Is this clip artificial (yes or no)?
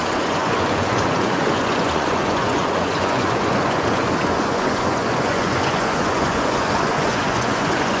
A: yes